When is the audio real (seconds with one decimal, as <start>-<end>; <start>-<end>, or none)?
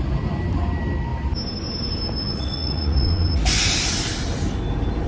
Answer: 0.0-2.3; 3.4-5.1